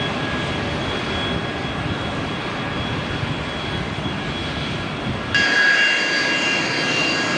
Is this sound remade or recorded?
recorded